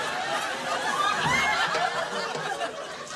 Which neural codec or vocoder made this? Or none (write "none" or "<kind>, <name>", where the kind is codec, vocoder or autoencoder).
none